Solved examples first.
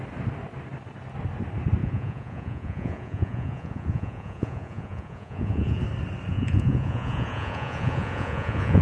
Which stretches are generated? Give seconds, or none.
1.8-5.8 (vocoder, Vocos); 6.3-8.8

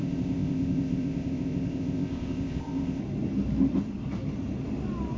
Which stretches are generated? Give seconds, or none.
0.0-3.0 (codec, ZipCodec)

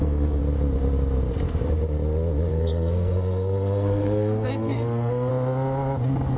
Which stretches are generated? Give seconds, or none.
0.0-0.4 (codec, SNAC); 2.5-5.3